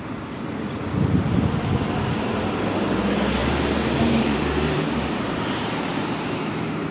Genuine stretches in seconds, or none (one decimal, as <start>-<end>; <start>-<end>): 0.0-3.4